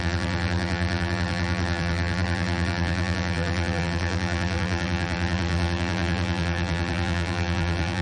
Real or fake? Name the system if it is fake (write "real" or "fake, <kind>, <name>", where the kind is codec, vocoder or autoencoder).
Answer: fake, vocoder, BigVGAN v2